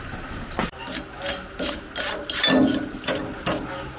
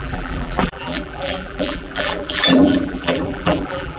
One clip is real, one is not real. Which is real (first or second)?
first